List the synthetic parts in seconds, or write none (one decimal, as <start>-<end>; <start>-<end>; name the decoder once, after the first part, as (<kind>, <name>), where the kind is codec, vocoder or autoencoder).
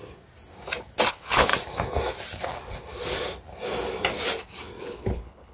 1.1-1.5 (codec, HILCodec); 4.8-5.5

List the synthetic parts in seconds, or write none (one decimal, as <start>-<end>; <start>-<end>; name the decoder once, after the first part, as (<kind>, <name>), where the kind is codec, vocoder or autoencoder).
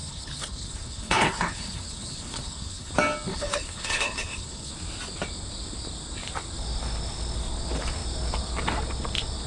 0.0-2.9 (codec, HILCodec); 3.3-4.7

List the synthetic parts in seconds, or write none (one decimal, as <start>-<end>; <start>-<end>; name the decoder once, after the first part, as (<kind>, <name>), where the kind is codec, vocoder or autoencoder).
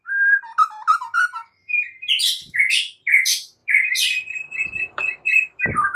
1.6-2.1 (vocoder, BigVGAN v2); 3.6-5.0